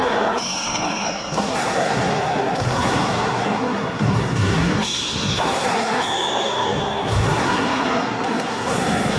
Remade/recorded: remade